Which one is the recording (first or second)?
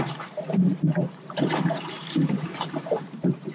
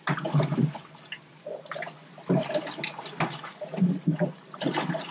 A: second